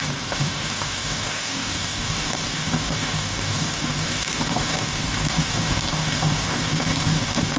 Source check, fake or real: fake